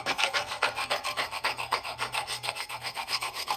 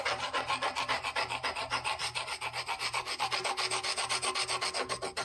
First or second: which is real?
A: second